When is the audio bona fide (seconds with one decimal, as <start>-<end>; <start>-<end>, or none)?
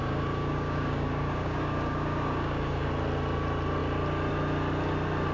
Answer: 2.9-5.3